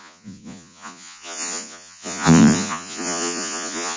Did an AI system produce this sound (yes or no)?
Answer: yes